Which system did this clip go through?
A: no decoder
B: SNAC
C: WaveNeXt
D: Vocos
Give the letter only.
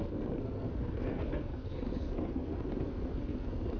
B